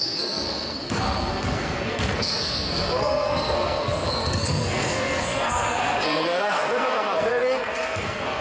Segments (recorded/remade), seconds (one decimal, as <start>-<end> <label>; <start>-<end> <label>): 0.0-8.4 remade

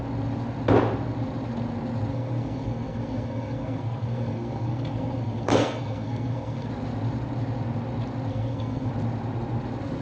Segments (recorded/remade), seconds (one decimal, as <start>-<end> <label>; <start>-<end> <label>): 0.0-2.1 recorded; 2.1-6.7 remade; 6.7-8.3 recorded; 8.3-8.9 remade; 8.9-10.0 recorded

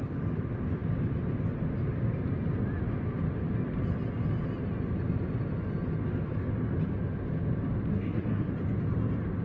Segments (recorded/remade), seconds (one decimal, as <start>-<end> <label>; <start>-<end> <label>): 0.0-7.9 recorded; 7.9-8.5 remade; 8.5-9.4 recorded

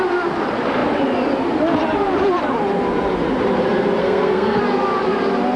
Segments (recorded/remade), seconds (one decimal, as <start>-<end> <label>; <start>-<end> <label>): 0.0-4.0 recorded; 4.0-4.6 remade; 4.6-5.6 recorded